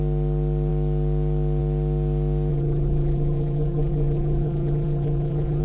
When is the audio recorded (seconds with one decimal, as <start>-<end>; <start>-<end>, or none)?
0.0-2.5